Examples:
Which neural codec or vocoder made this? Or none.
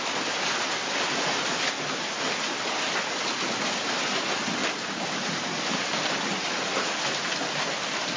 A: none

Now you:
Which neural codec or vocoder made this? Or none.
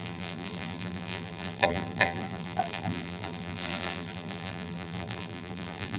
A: vocoder, BigVGAN v2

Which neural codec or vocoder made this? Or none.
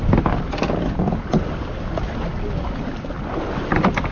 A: none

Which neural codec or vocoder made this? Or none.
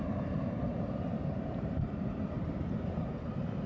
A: vocoder, BigVGAN v2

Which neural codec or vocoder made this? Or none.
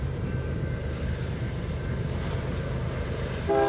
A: vocoder, BigVGAN v2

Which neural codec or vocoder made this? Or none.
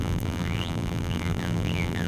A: vocoder, BigVGAN v2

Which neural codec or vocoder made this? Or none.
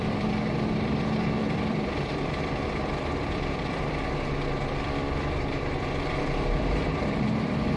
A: vocoder, BigVGAN v2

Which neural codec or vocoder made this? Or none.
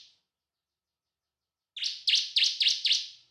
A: none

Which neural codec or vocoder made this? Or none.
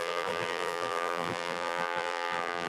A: vocoder, BigVGAN v2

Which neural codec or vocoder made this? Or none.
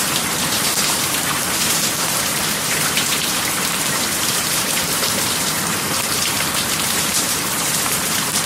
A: vocoder, BigVGAN v2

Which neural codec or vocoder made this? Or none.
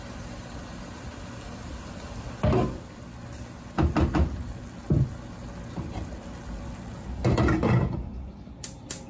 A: none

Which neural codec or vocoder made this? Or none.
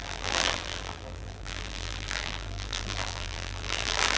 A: vocoder, BigVGAN v2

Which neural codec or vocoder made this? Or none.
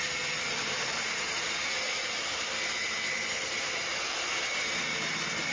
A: vocoder, BigVGAN v2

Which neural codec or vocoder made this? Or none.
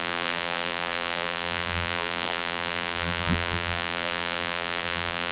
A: vocoder, BigVGAN v2